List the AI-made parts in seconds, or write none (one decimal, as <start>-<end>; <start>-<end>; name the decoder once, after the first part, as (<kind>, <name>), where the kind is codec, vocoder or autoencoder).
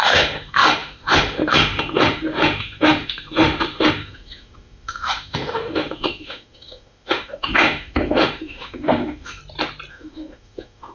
0.0-9.4 (autoencoder, DAC-VAE); 9.9-10.9